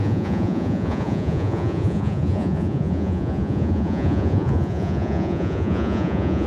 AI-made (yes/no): yes